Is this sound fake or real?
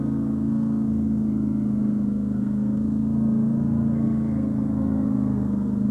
fake